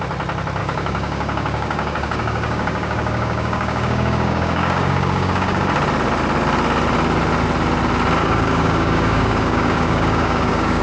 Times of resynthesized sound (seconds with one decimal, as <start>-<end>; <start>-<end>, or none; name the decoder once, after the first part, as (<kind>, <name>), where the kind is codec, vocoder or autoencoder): 0.6-5.7 (codec, DAC); 8.2-10.8